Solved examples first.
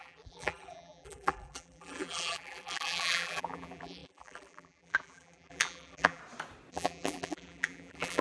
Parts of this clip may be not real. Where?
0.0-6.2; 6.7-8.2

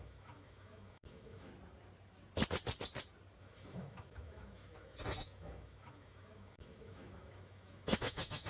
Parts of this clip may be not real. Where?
0.0-1.5; 3.4-8.5

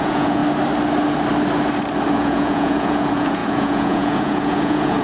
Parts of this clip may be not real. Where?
0.0-0.4; 2.1-5.0

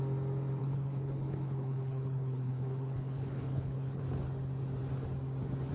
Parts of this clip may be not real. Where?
0.6-4.0

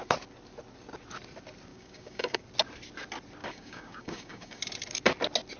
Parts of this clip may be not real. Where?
1.7-2.4; 3.4-4.6